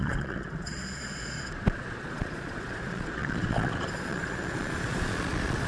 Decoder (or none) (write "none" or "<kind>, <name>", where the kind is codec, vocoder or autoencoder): vocoder, Vocos